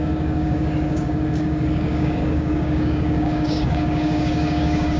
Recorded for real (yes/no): no